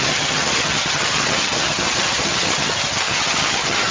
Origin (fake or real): fake